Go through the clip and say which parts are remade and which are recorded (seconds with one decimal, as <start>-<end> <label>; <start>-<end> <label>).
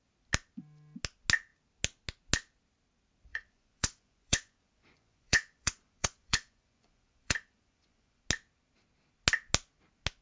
0.0-3.3 recorded; 3.3-8.2 remade; 8.2-10.2 recorded